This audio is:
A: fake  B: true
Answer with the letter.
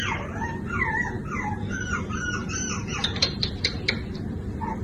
A